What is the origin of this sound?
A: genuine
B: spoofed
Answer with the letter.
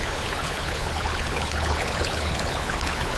B